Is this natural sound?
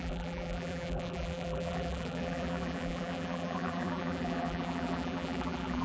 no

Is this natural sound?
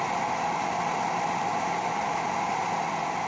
yes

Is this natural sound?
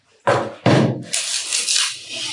yes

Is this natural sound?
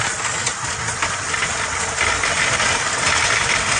yes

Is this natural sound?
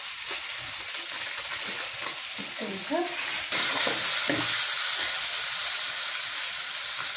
yes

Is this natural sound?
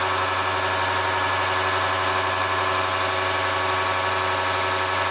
yes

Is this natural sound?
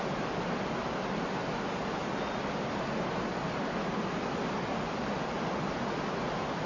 yes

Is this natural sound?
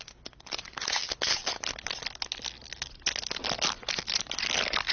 yes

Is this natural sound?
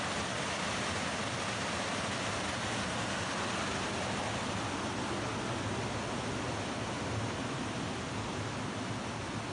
yes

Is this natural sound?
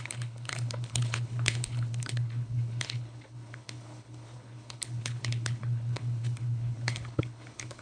no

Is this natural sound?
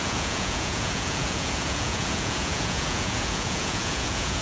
no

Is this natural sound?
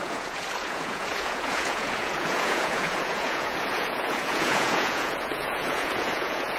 no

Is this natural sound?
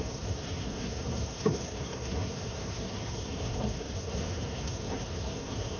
no